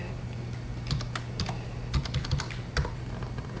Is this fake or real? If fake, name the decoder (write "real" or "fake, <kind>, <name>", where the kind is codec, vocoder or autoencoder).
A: real